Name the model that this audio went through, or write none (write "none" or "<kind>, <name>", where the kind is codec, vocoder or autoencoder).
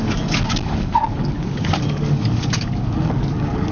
codec, DAC